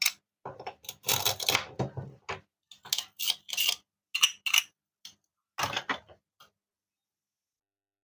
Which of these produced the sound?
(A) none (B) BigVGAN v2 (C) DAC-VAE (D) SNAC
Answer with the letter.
A